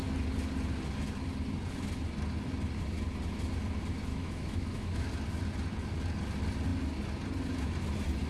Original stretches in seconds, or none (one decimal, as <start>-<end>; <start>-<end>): 0.0-4.1; 5.1-8.3